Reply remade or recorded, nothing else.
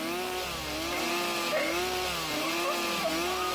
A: recorded